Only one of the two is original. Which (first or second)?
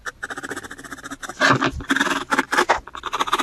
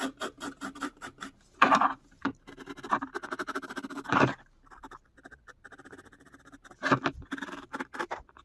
first